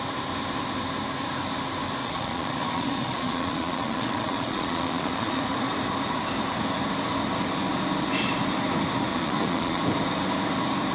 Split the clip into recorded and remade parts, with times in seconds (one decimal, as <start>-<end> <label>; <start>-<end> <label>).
0.0-2.0 recorded; 2.0-5.4 remade; 5.4-9.1 recorded; 9.1-9.8 remade; 9.8-10.9 recorded